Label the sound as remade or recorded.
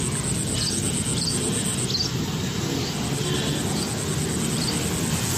recorded